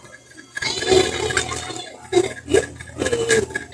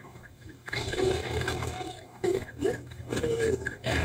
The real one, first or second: first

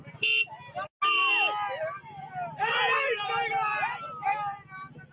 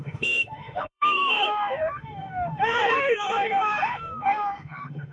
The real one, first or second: first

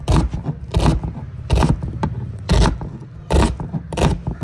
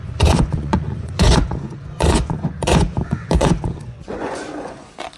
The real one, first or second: first